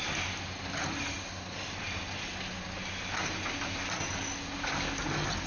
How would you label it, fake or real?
real